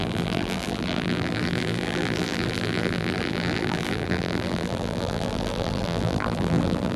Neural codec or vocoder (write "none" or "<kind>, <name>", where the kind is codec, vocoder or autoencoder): vocoder, BigVGAN v2